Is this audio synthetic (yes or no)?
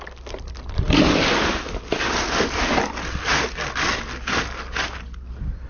no